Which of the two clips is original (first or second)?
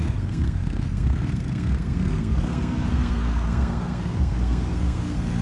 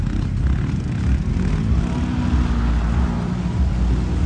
second